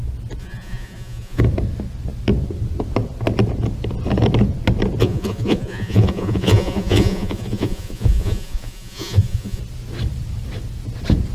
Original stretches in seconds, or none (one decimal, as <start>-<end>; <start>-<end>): 0.0-0.4; 1.4-5.0; 9.6-11.3